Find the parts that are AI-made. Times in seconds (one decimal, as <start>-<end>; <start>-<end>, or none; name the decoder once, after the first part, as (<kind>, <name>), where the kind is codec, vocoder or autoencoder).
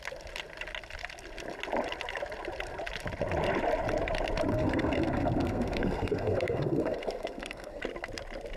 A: 4.5-7.8 (codec, SNAC)